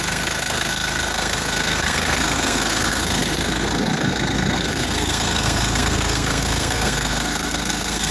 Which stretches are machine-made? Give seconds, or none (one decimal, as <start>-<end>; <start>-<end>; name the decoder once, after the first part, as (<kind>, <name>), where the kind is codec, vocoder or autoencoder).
0.0-8.1 (codec, SNAC)